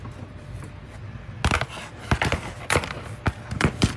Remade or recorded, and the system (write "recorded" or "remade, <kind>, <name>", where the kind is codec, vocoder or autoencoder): recorded